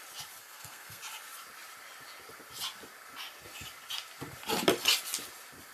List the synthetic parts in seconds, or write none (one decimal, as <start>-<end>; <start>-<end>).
0.4-1.0